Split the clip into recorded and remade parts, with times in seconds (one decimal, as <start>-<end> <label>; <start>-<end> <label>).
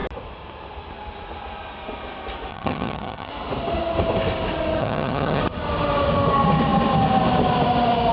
0.0-2.5 recorded; 2.5-3.3 remade; 3.3-4.8 recorded; 4.8-5.4 remade; 5.4-8.1 recorded